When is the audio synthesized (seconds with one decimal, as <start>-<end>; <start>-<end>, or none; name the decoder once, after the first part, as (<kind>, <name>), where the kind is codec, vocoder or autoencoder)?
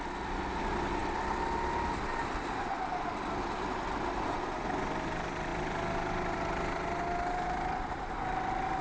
none